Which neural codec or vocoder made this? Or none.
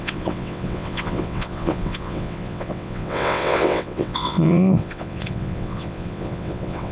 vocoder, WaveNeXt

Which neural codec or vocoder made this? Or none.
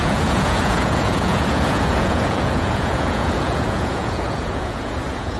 vocoder, Vocos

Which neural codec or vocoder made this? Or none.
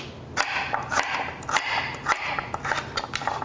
none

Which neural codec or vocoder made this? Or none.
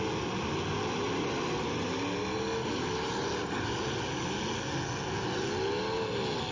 none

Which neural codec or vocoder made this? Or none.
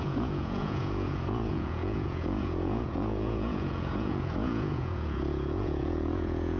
vocoder, Vocos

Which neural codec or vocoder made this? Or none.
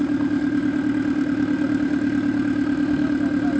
none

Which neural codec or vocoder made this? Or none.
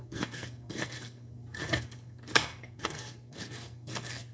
codec, SNAC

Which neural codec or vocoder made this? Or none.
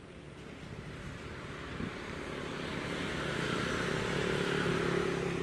vocoder, BigVGAN v2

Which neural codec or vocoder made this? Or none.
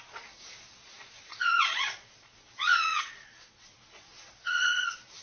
vocoder, Vocos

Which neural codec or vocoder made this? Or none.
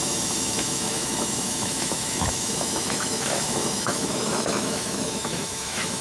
autoencoder, DAC-VAE